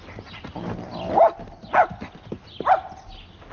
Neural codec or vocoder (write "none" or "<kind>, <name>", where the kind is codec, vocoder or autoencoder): none